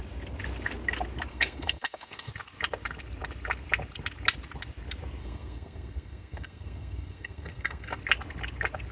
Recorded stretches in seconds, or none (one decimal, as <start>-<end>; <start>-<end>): 0.0-1.3; 2.3-5.2; 8.0-8.9

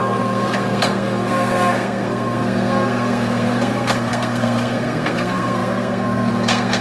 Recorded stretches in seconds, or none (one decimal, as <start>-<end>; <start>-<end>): none